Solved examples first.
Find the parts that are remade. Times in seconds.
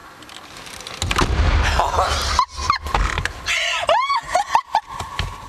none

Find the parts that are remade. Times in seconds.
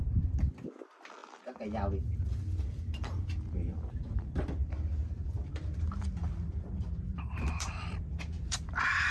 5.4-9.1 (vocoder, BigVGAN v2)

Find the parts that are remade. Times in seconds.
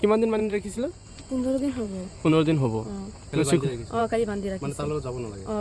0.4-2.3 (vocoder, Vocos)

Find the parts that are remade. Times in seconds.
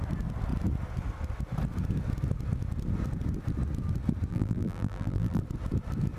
4.3-5.4 (vocoder, BigVGAN v2)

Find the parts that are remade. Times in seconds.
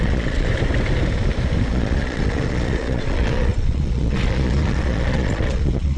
0.0-0.5 (vocoder, Vocos); 1.7-6.0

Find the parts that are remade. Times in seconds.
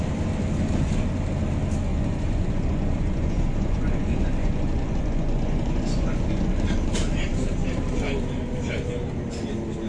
1.9-6.5 (vocoder, Vocos)